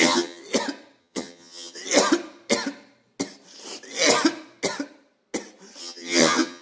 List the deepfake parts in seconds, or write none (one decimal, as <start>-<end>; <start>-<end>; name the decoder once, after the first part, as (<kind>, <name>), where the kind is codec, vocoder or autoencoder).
0.0-0.4 (vocoder, HiFi-GAN); 1.0-1.8; 5.8-6.6